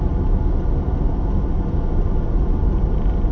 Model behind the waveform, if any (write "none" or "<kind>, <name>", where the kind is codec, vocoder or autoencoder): none